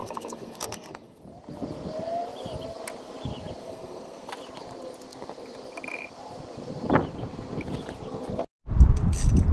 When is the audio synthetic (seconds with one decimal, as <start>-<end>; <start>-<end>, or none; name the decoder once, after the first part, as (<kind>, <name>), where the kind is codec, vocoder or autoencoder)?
0.0-1.2 (codec, SNAC); 3.6-4.3